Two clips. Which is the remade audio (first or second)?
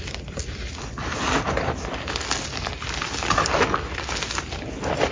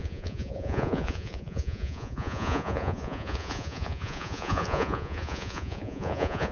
second